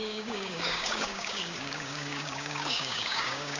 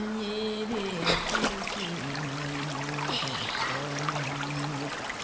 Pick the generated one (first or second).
first